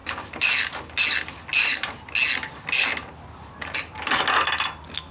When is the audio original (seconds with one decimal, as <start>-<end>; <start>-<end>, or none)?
0.0-5.1